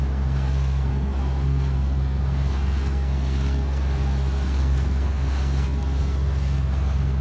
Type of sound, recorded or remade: remade